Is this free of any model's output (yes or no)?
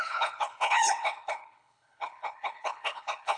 no